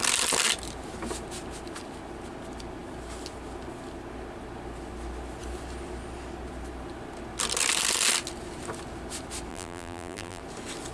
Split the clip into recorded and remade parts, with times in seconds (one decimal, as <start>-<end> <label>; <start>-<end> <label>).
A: 0.0-9.5 recorded; 9.5-10.4 remade; 10.4-10.9 recorded